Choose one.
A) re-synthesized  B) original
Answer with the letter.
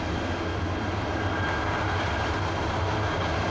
B